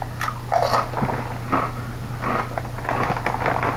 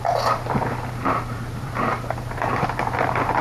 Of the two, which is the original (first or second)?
first